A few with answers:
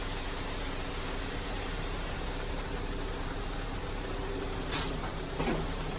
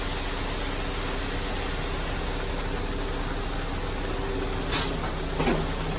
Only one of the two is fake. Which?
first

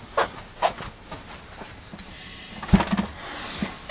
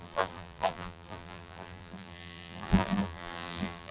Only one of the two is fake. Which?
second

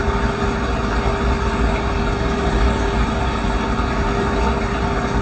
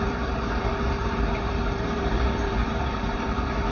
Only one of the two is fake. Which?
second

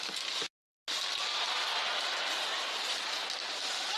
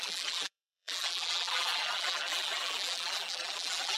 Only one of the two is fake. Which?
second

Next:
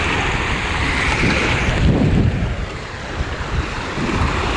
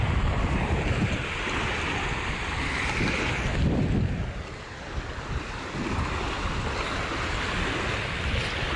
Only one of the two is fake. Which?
first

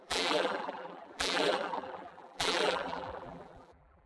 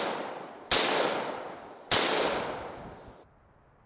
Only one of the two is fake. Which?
first